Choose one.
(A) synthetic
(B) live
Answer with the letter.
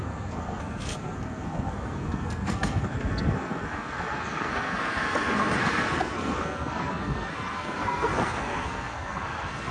A